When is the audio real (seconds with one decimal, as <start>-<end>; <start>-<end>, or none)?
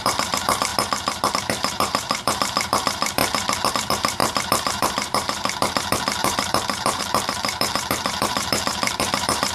0.7-1.3; 3.2-3.7